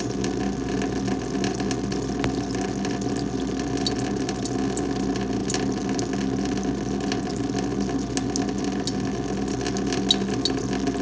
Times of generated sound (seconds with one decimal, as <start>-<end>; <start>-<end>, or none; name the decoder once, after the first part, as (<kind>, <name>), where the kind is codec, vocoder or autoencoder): none